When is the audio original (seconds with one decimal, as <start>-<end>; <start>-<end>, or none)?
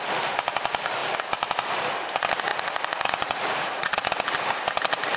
0.0-2.5; 4.1-5.2